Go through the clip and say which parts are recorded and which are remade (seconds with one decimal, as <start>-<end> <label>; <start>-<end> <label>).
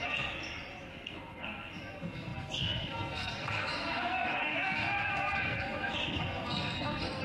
0.0-0.4 remade; 0.4-0.9 recorded; 0.9-7.2 remade